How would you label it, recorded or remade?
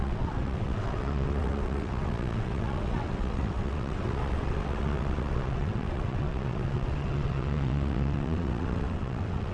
remade